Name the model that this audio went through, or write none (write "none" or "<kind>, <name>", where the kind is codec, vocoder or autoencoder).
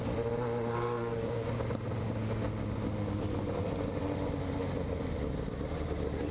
none